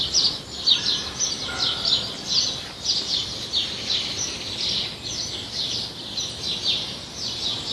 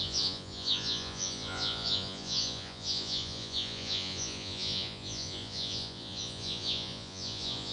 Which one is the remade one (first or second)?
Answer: second